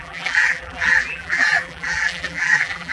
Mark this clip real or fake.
fake